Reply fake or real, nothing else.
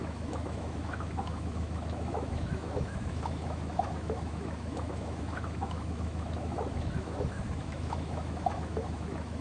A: fake